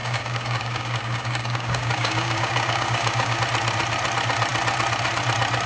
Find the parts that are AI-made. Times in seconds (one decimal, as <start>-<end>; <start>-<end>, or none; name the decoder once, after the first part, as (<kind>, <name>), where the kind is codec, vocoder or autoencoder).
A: 0.0-3.4 (codec, DAC)